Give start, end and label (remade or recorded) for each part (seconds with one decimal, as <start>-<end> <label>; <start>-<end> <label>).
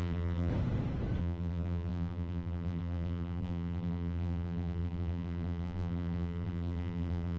0.0-0.5 remade; 0.5-1.2 recorded; 1.2-7.4 remade